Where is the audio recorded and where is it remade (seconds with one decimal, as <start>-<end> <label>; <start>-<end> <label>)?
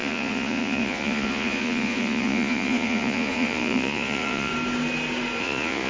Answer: 0.0-4.5 remade; 4.5-5.4 recorded; 5.4-5.9 remade